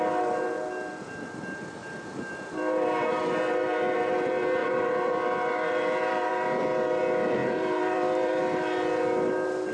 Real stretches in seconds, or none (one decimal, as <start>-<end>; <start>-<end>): 0.0-1.8; 3.1-4.6; 7.0-7.4; 8.4-9.7